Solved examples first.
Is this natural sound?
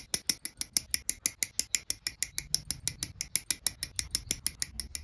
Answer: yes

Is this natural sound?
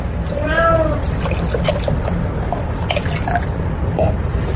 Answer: yes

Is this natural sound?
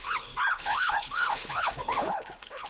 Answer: no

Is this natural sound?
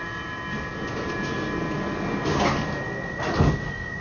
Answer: yes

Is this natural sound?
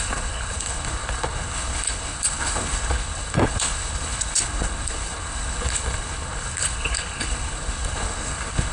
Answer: no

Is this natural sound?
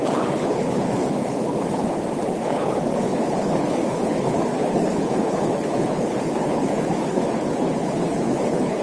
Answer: no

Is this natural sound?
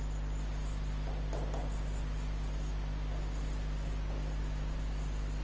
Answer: yes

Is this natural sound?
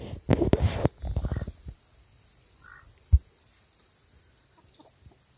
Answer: yes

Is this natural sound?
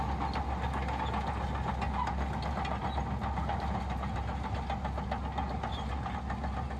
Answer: yes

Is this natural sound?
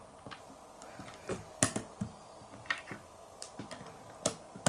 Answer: yes